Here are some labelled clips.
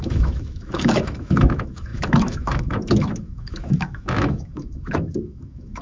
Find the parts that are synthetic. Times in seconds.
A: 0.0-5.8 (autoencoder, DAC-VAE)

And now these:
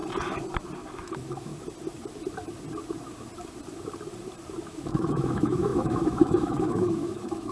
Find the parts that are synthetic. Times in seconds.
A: 1.0-1.5 (autoencoder, DAC-VAE); 4.6-7.5

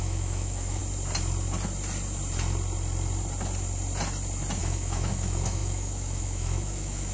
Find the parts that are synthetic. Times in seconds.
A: 0.0-0.8 (autoencoder, DAC-VAE); 4.6-7.1

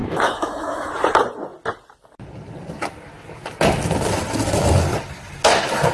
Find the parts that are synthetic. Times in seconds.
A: 0.0-0.9 (autoencoder, DAC-VAE)

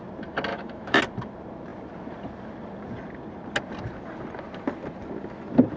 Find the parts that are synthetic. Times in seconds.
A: 0.5-1.0 (autoencoder, DAC-VAE)

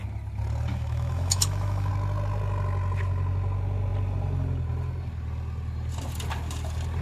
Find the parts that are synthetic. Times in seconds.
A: 0.7-1.9 (autoencoder, DAC-VAE)